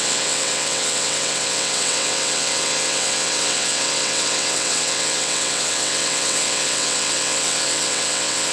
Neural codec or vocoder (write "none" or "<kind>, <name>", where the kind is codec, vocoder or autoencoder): vocoder, WaveNeXt